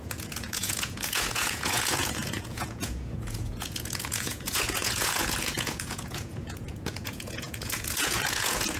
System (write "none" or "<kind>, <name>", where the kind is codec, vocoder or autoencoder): vocoder, Vocos